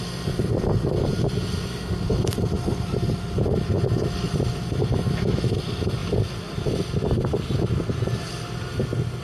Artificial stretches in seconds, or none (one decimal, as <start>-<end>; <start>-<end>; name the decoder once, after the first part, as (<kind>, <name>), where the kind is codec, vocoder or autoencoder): none